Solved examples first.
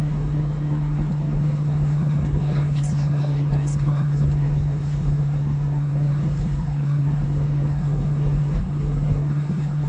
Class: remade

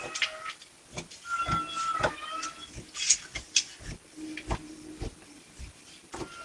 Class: recorded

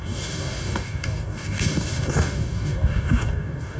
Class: remade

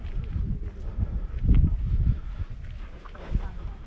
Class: recorded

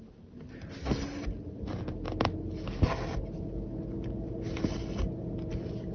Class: recorded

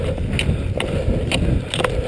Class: recorded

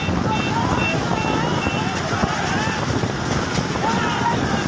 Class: recorded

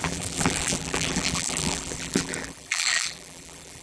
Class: remade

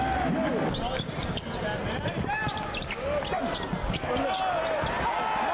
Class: recorded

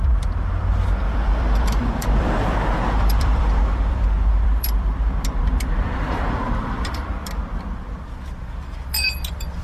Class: remade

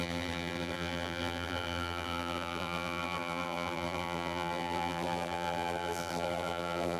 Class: remade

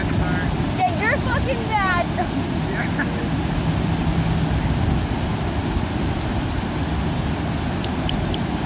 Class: recorded